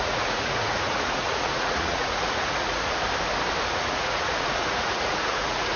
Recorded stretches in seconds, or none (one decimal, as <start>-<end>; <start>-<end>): 3.0-3.7